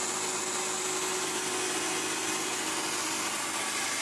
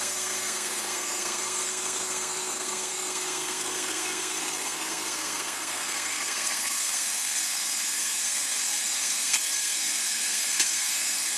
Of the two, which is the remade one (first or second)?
second